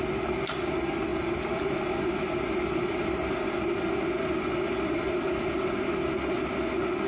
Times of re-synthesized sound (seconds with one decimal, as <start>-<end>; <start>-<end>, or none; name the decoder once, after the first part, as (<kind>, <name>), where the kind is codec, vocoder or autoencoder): 1.1-5.4 (vocoder, BigVGAN v2)